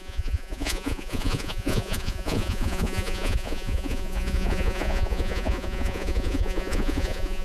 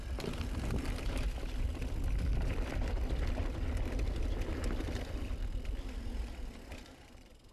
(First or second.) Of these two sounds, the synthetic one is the first